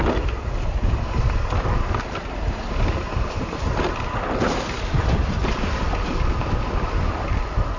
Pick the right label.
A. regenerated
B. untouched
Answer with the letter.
B